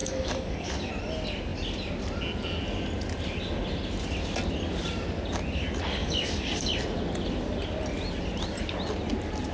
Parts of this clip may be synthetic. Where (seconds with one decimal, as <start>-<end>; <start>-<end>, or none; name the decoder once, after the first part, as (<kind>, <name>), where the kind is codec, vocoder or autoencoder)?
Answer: 0.0-0.9 (codec, DAC); 6.0-6.7